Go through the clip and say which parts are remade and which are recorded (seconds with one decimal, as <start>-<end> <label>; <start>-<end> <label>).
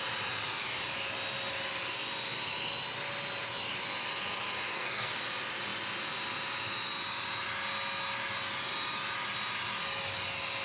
0.0-4.7 recorded; 4.7-5.2 remade; 5.2-10.6 recorded